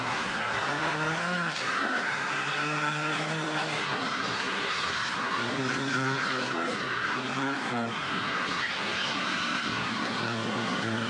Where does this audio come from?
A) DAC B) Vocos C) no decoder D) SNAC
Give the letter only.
D